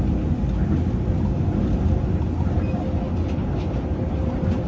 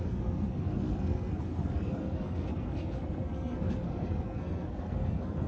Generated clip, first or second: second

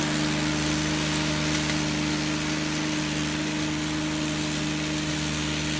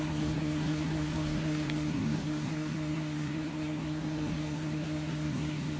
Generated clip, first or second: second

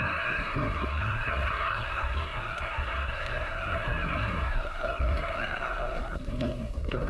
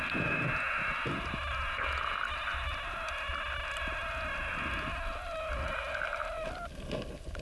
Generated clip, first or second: first